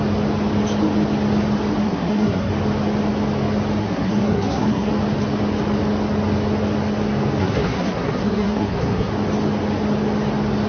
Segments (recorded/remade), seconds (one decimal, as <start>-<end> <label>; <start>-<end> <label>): 0.0-1.8 recorded; 1.8-2.5 remade; 2.5-3.8 recorded; 3.8-4.9 remade; 4.9-7.4 recorded; 7.4-9.1 remade; 9.1-10.7 recorded